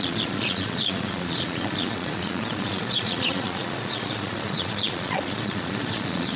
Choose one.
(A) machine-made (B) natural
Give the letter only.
A